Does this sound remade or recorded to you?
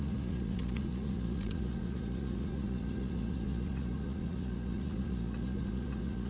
remade